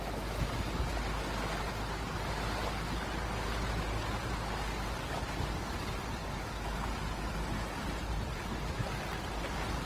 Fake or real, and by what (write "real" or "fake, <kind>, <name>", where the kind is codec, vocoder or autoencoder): real